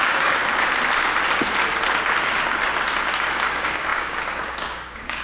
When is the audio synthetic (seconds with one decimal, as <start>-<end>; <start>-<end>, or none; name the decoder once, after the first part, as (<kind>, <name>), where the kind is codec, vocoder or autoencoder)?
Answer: 0.0-0.4 (codec, DAC); 3.5-5.2